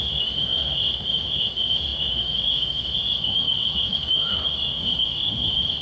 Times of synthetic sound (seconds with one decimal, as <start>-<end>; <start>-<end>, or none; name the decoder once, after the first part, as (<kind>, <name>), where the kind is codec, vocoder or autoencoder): 0.0-5.8 (autoencoder, DAC-VAE)